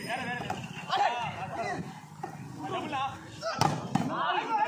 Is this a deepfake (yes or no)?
no